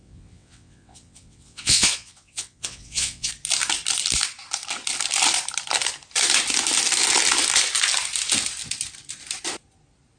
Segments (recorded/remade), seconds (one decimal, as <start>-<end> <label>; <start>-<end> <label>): 0.0-3.3 remade; 3.3-10.2 recorded